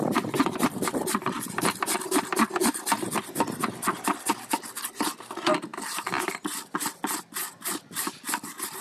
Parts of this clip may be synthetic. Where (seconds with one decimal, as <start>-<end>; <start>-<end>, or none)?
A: none